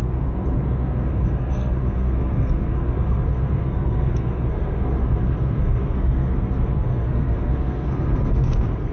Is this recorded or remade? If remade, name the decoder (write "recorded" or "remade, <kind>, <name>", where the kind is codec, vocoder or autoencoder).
remade, codec, SNAC